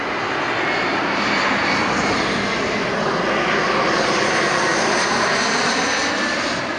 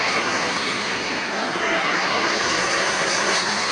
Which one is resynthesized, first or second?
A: second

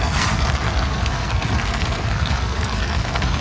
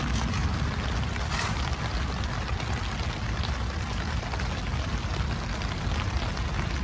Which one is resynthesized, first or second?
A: first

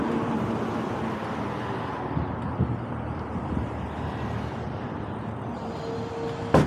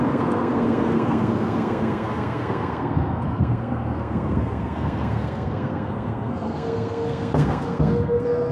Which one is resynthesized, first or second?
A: second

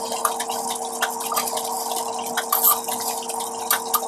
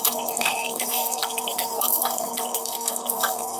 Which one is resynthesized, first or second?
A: second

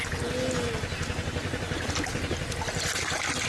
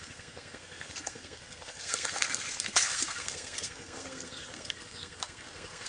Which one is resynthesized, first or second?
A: second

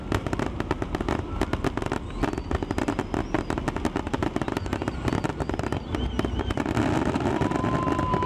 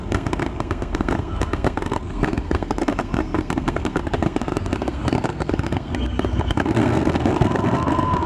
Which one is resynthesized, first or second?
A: second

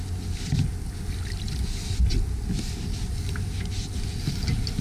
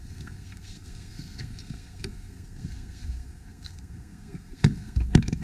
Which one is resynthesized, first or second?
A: second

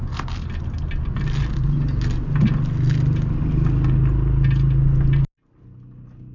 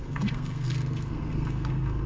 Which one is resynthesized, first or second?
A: second